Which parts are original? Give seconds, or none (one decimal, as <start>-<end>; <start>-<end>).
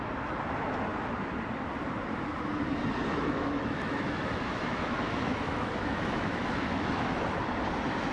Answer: 0.0-3.1; 7.2-8.1